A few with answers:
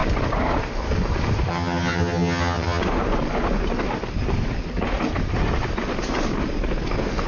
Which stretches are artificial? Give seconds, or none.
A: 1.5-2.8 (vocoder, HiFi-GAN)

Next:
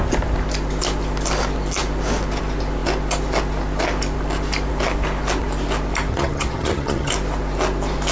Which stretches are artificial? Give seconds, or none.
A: 6.1-7.1 (vocoder, HiFi-GAN)

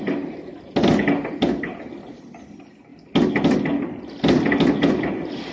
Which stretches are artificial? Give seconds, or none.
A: none